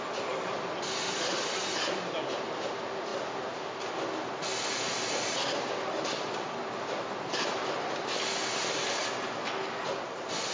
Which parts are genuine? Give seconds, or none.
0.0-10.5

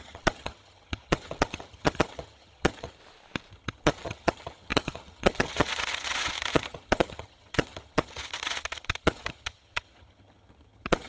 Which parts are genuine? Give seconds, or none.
3.0-3.5

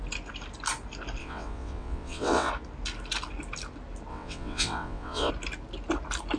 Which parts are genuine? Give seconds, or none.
0.0-1.2; 2.5-4.1; 5.3-6.4

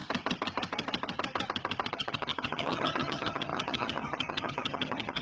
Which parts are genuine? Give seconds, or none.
0.0-1.9

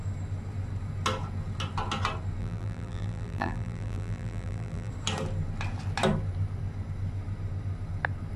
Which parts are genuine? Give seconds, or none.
0.0-2.4; 4.9-8.4

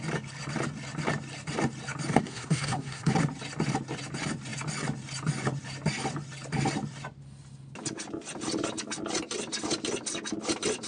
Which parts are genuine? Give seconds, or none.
0.0-2.1; 3.1-10.9